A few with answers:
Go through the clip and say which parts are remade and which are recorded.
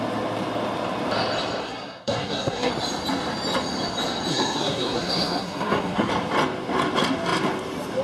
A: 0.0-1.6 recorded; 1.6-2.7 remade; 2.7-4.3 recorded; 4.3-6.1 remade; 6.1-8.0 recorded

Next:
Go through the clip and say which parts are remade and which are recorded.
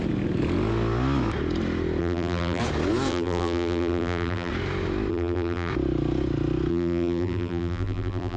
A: 0.0-2.0 recorded; 2.0-2.6 remade; 2.6-3.1 recorded; 3.1-4.5 remade; 4.5-5.1 recorded; 5.1-5.7 remade; 5.7-6.7 recorded; 6.7-8.4 remade